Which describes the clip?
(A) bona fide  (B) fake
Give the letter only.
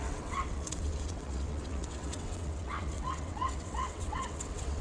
B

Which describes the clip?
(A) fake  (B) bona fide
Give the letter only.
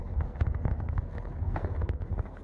A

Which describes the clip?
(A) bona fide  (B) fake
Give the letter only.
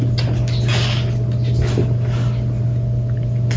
A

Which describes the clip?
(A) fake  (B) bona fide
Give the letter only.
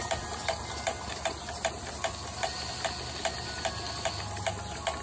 B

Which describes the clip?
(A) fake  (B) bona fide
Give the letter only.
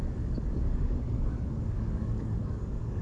A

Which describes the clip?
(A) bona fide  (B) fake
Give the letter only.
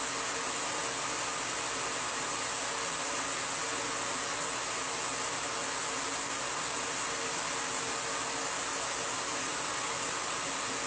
A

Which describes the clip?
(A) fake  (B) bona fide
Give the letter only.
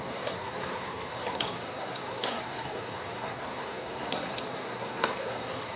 A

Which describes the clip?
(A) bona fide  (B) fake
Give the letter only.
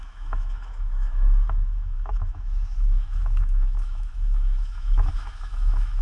B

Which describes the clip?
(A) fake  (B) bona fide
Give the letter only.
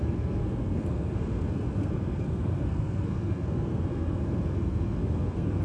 A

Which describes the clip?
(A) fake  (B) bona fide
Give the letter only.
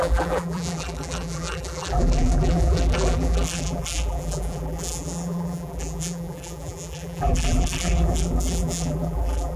A